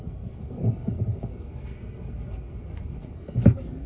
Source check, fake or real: fake